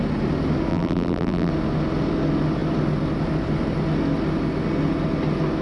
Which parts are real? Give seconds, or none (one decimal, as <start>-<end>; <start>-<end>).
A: 0.0-0.7; 1.5-5.6